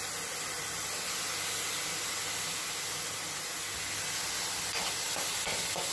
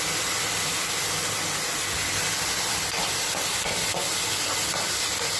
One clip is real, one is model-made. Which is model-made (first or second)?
second